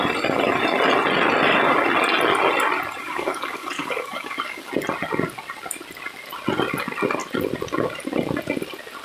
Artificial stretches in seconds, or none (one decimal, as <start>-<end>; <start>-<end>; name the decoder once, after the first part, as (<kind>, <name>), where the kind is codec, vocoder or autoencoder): 3.0-4.7 (codec, DAC)